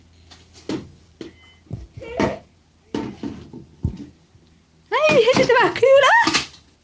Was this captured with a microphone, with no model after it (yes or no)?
yes